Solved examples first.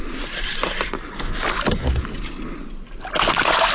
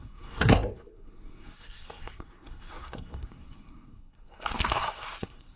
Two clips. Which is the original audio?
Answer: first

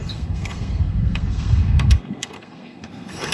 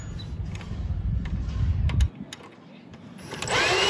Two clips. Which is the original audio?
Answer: second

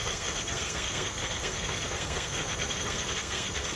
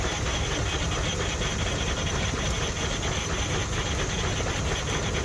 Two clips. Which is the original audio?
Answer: second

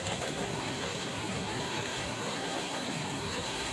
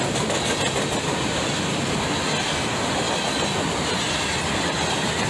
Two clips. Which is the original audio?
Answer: second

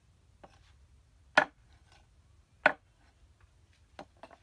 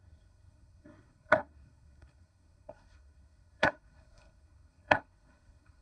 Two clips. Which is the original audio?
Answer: first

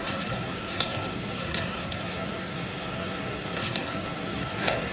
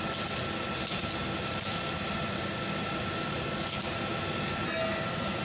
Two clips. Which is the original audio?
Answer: second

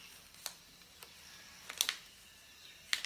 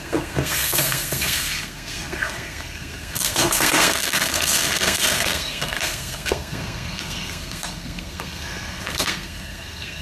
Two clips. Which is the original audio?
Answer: first